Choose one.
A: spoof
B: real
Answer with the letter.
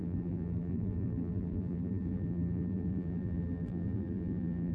A